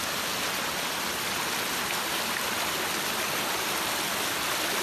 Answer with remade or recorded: recorded